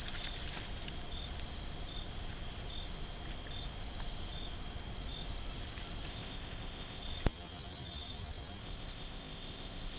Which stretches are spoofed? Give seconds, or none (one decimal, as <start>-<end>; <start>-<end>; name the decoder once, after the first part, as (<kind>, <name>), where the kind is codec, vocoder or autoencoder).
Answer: 6.1-7.0 (codec, ZipCodec); 8.6-10.0